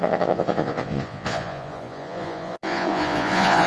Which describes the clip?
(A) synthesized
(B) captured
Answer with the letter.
A